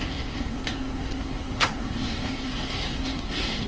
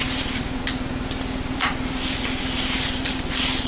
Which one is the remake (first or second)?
first